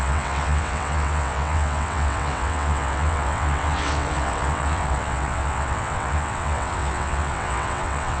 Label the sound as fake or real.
fake